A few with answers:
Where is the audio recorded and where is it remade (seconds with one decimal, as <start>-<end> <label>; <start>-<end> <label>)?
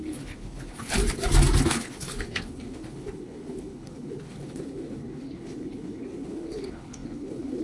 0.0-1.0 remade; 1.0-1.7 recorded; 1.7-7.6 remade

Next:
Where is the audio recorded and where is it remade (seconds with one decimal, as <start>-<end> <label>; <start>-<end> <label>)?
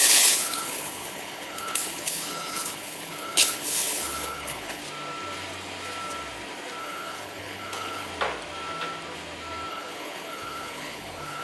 0.0-4.8 remade; 4.8-6.8 recorded; 6.8-8.1 remade; 8.1-9.7 recorded; 9.7-11.4 remade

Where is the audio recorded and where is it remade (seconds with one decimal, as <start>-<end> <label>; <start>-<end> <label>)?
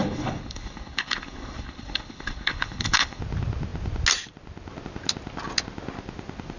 0.0-3.2 remade; 3.2-6.6 recorded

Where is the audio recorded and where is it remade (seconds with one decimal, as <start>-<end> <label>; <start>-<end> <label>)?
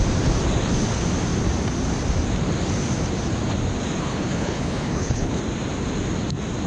0.0-4.0 recorded; 4.0-5.4 remade; 5.4-6.7 recorded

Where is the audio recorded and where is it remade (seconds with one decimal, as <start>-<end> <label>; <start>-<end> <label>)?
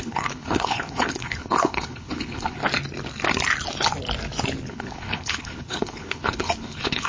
0.0-2.6 remade; 2.6-4.7 recorded; 4.7-7.1 remade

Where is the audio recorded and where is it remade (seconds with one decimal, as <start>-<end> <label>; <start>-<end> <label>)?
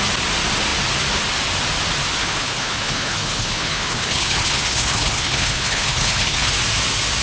0.0-2.2 recorded; 2.2-6.5 remade; 6.5-7.2 recorded